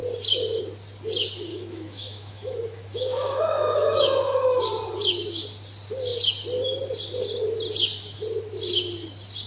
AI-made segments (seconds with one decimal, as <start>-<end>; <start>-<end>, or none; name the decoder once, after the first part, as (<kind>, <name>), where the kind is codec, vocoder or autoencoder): 1.5-4.6 (autoencoder, DAC-VAE)